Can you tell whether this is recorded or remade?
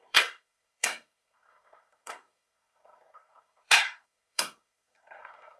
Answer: remade